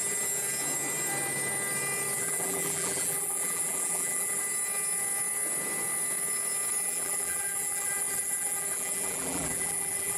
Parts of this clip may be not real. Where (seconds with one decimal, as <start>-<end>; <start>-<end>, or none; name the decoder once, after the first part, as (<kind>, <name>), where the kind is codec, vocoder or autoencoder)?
2.2-4.4 (vocoder, BigVGAN v2); 6.8-10.2